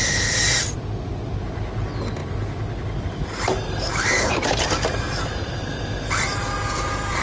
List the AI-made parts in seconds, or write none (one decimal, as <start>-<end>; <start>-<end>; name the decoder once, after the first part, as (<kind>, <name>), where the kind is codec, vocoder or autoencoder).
0.0-1.1 (vocoder, BigVGAN v2); 3.9-4.7